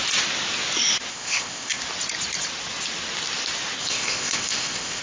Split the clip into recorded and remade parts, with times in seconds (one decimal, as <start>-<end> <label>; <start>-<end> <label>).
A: 0.0-1.1 recorded; 1.1-1.8 remade; 1.8-3.8 recorded; 3.8-5.0 remade